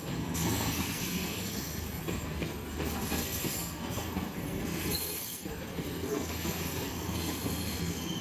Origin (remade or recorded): remade